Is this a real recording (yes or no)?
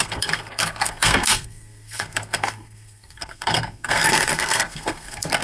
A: no